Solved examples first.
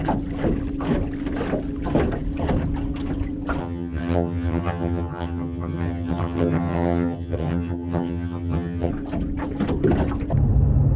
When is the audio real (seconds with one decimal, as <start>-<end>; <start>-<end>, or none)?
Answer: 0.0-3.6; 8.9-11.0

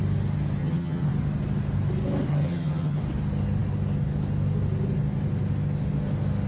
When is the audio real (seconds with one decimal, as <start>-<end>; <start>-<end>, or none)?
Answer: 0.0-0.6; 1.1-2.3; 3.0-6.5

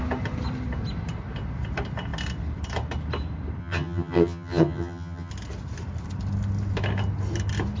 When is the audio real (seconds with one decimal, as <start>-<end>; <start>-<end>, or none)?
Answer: 0.0-3.6; 5.3-7.8